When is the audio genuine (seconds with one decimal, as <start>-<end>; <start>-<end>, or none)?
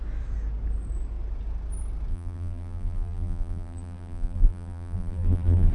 0.0-2.1